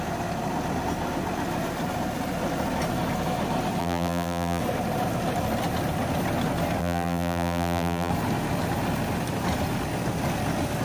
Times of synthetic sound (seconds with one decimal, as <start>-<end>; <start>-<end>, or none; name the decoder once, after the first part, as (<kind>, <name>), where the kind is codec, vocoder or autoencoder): 3.8-4.6 (vocoder, BigVGAN v2); 6.8-8.1